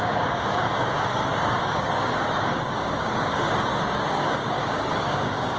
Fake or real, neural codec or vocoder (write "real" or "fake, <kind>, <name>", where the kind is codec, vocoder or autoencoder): fake, codec, DAC